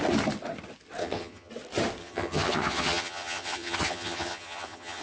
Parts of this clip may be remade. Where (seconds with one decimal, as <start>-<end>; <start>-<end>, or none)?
1.0-1.5; 2.0-5.0